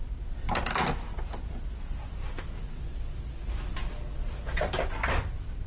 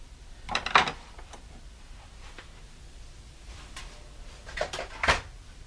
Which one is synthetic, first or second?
second